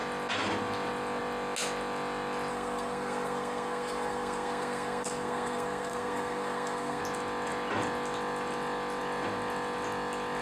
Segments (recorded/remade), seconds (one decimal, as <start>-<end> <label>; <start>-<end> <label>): 0.0-2.5 recorded; 2.5-7.0 remade; 7.0-10.4 recorded